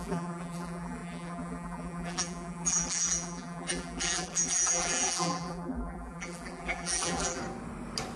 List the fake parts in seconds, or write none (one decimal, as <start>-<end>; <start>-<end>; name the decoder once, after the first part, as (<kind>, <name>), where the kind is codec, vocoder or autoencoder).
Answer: 0.0-7.4 (vocoder, BigVGAN v2)